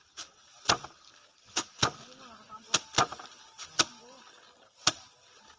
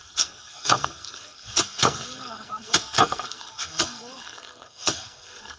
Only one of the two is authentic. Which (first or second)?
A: first